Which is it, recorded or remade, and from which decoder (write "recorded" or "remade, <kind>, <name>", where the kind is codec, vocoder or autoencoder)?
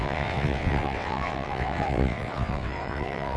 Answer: remade, vocoder, WaveNeXt